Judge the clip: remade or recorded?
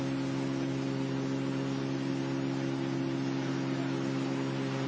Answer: recorded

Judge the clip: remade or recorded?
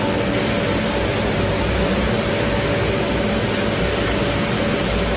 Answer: recorded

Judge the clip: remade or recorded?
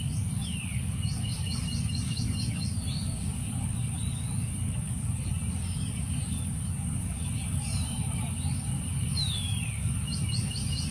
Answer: remade